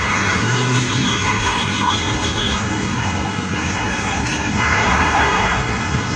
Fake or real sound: fake